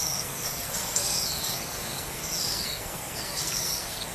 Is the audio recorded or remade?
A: remade